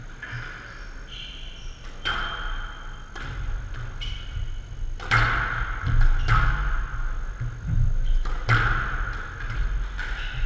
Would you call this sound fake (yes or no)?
no